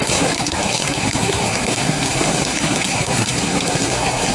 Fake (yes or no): yes